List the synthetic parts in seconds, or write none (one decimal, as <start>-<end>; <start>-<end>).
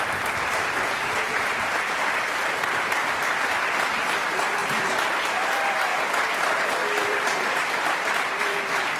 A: 0.0-4.6; 5.1-9.0